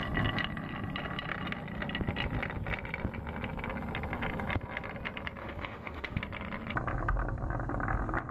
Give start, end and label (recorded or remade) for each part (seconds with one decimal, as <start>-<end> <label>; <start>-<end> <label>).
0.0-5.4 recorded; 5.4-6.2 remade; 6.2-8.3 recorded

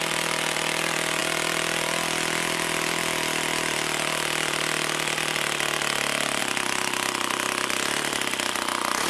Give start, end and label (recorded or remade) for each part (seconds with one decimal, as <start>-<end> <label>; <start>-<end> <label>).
0.0-9.1 recorded

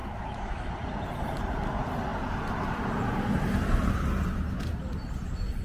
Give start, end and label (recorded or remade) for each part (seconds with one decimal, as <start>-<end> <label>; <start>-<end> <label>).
0.0-0.7 remade; 0.7-5.6 recorded